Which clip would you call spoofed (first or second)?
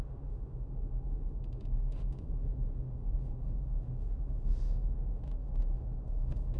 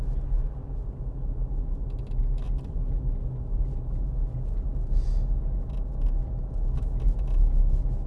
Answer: first